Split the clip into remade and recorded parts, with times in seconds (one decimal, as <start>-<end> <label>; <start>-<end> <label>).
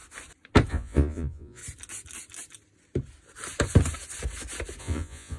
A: 0.0-0.7 recorded; 0.7-1.6 remade; 1.6-4.8 recorded; 4.8-5.4 remade